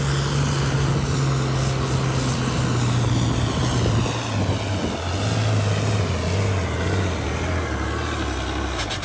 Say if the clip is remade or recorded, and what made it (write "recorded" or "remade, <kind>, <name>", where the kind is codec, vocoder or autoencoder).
recorded